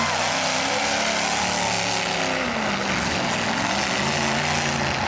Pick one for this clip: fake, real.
real